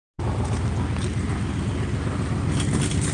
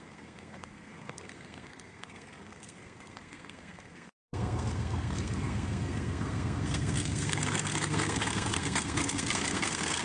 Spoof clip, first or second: second